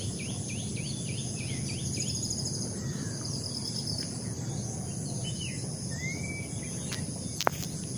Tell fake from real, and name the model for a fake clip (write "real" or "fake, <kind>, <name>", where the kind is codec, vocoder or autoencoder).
real